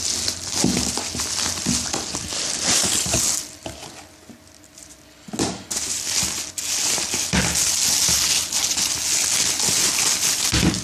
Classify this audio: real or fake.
real